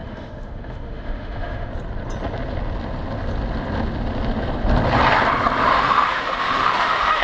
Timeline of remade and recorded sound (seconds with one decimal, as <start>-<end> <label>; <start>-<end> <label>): 0.0-1.7 remade; 1.7-5.7 recorded; 5.7-7.2 remade